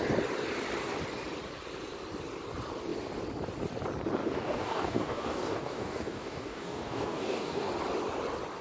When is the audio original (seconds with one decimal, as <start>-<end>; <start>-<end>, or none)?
0.0-4.2; 7.7-8.6